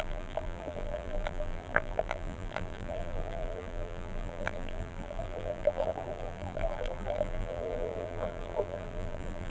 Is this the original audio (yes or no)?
no